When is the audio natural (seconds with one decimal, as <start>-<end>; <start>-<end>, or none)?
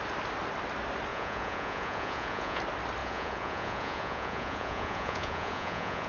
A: 0.0-1.1; 2.6-3.0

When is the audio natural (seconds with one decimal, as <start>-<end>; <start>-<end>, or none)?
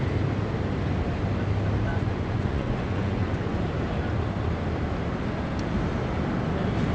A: 0.0-1.9; 3.6-6.9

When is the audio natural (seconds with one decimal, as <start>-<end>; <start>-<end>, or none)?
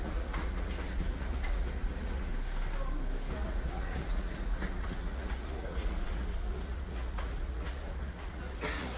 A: 2.3-3.3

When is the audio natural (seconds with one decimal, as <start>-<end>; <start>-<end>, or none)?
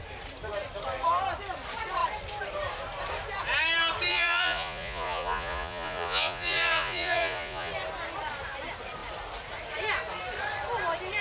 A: 0.0-4.1; 7.7-11.2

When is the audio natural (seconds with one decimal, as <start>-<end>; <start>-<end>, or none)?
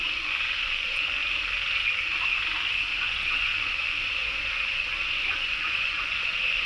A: 1.2-3.0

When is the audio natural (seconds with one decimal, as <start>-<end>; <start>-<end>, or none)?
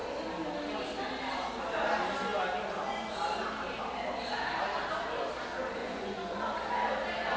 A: 0.0-5.8; 6.4-7.4